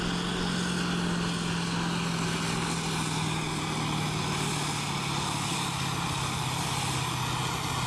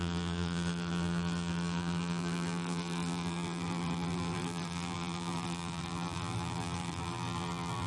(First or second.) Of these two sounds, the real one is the first